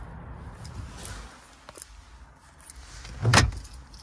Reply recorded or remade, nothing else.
recorded